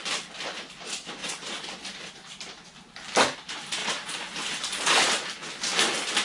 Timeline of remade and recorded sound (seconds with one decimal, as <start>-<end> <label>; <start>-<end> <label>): 0.0-1.2 recorded; 1.2-1.7 remade; 1.7-2.2 recorded; 2.2-2.8 remade; 2.8-3.8 recorded; 3.8-5.1 remade; 5.1-6.2 recorded